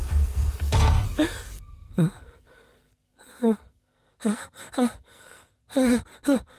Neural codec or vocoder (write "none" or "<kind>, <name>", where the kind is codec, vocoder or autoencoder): codec, SNAC